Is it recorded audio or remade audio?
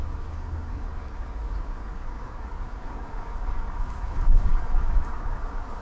remade